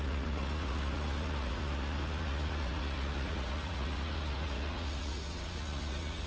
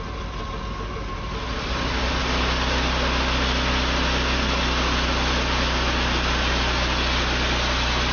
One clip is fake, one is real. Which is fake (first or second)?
first